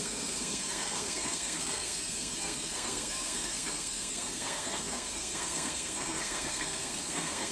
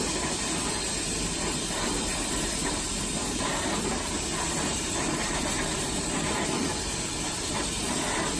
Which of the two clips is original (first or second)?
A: second